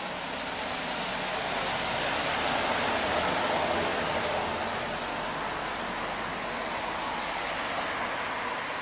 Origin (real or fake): real